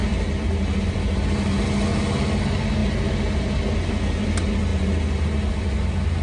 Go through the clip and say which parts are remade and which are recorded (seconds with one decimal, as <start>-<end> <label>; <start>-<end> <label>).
0.0-6.2 recorded